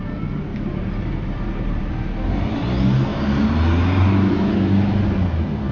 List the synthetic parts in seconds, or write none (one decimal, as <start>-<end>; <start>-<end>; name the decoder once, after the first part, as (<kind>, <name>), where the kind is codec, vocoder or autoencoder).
0.5-1.9 (vocoder, BigVGAN v2); 3.1-4.3